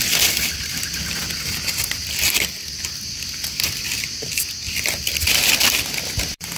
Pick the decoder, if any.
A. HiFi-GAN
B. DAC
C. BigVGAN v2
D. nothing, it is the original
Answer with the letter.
D